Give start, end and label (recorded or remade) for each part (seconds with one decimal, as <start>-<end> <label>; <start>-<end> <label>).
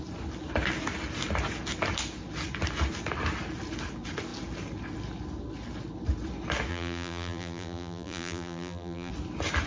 0.0-6.7 recorded; 6.7-9.1 remade; 9.1-9.7 recorded